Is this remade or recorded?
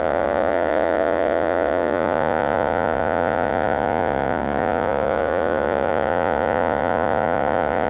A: remade